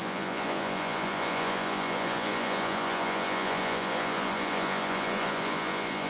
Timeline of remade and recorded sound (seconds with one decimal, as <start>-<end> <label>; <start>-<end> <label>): 0.0-6.1 remade